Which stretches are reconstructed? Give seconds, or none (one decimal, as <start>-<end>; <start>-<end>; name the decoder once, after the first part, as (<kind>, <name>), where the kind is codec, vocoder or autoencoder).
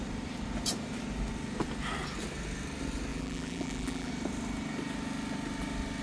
3.1-4.1 (vocoder, BigVGAN v2)